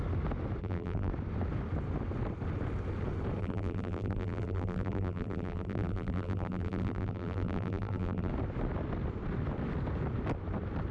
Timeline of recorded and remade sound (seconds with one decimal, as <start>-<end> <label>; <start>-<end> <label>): 0.0-0.6 recorded; 0.6-1.1 remade; 1.1-3.4 recorded; 3.4-8.3 remade; 8.3-10.9 recorded